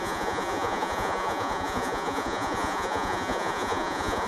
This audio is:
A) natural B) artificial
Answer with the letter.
B